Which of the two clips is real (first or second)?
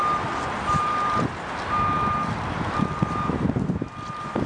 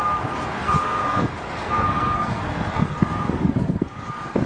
first